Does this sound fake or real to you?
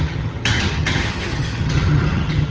fake